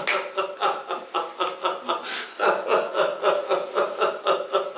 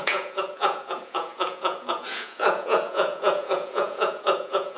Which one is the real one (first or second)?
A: first